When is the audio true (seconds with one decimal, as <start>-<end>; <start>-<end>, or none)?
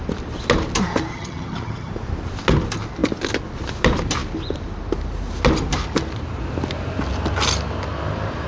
0.0-1.1; 1.9-8.5